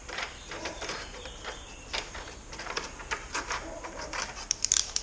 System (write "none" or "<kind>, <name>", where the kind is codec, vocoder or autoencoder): vocoder, BigVGAN v2